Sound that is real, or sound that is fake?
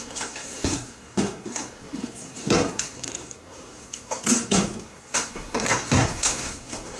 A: fake